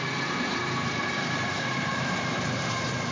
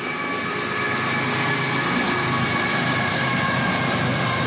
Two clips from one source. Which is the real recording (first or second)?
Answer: second